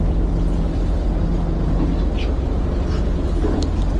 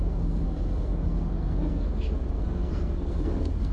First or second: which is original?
first